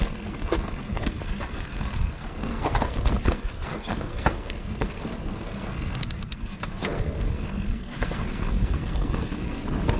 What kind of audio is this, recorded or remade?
remade